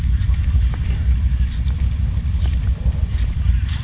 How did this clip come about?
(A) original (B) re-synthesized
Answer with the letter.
A